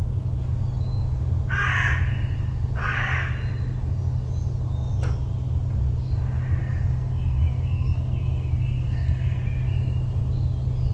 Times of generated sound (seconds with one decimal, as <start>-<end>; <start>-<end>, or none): 2.8-3.3; 6.6-9.4